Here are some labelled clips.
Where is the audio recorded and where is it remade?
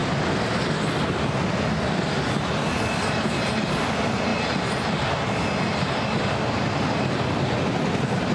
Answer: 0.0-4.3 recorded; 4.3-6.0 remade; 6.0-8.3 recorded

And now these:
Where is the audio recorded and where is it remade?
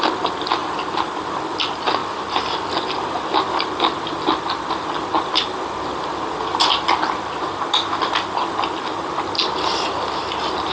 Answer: 0.0-10.7 recorded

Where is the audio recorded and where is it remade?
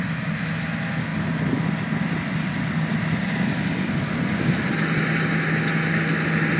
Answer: 0.0-6.6 recorded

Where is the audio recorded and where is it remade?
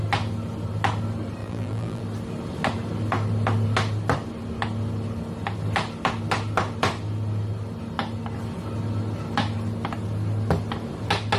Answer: 0.0-1.4 recorded; 1.4-2.0 remade; 2.0-11.4 recorded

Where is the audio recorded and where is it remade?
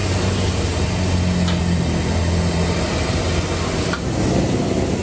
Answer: 0.0-5.0 recorded